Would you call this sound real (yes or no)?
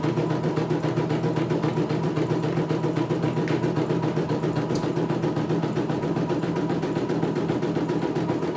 yes